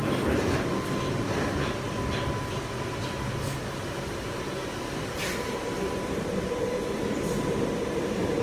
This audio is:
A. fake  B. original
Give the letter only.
B